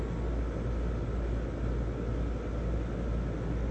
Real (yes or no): yes